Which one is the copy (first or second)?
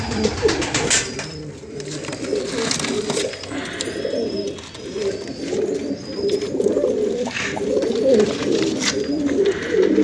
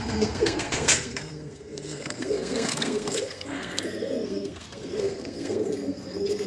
second